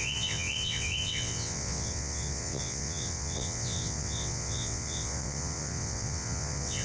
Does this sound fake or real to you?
fake